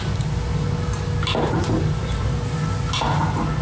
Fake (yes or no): no